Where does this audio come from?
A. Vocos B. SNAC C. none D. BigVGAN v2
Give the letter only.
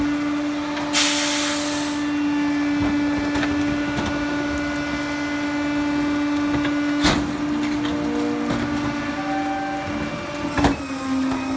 C